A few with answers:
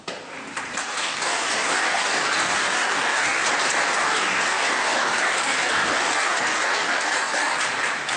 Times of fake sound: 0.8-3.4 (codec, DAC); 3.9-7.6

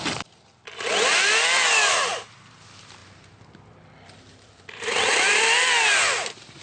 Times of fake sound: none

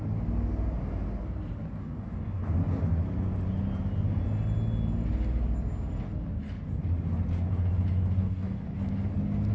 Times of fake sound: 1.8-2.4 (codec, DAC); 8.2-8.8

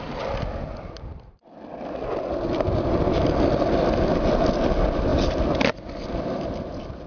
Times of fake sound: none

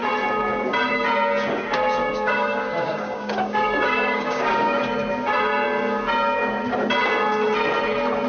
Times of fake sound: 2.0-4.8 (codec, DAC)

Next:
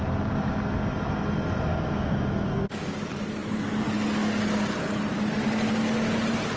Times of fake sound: 1.7-3.0 (codec, DAC)